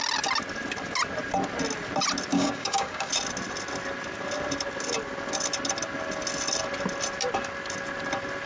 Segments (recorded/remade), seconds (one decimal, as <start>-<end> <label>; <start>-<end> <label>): 0.0-2.3 recorded; 2.3-3.1 remade; 3.1-8.5 recorded